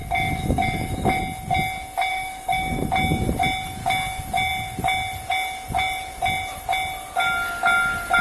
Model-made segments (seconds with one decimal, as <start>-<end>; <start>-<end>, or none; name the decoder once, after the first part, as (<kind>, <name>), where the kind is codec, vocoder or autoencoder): 0.0-1.2 (autoencoder, DAC-VAE); 2.1-2.9